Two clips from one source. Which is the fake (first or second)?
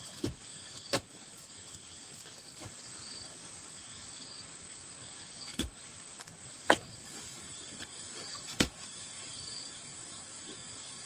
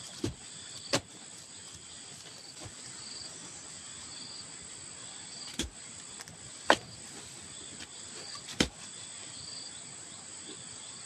first